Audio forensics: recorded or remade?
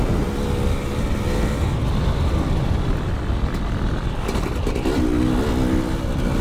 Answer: recorded